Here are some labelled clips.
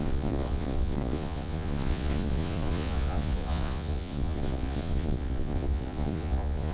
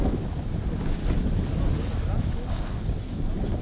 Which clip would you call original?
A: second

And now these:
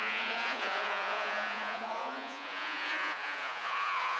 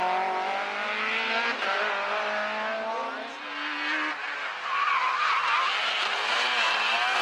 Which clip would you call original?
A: second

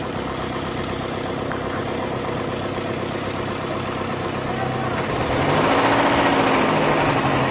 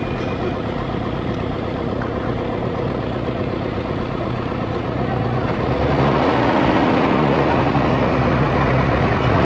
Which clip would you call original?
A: first